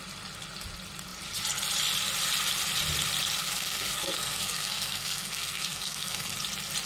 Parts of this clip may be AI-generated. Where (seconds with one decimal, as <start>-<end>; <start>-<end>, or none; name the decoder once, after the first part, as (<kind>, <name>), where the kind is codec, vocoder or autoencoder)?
3.4-6.3 (codec, SNAC)